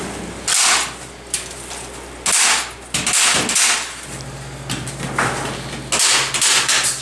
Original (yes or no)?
yes